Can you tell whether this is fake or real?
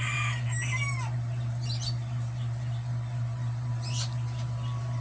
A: real